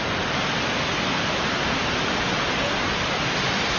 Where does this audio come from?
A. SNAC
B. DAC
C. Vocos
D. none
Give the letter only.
D